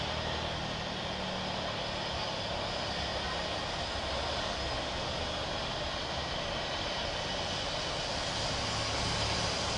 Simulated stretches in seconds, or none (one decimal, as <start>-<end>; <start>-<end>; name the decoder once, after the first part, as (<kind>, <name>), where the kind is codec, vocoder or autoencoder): none